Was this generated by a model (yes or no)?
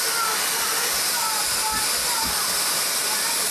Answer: no